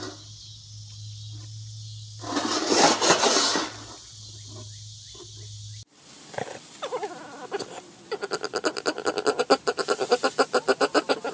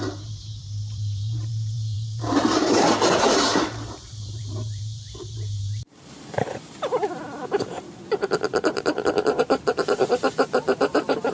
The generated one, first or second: second